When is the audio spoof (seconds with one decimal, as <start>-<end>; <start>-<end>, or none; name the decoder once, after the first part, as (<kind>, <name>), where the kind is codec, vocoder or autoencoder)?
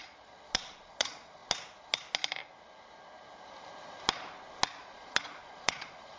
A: 0.0-1.4 (vocoder, Vocos); 4.8-6.2